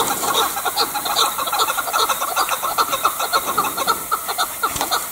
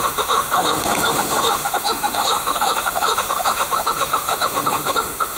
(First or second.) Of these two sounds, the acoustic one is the first